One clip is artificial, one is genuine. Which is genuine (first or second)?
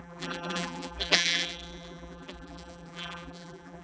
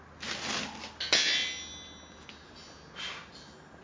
second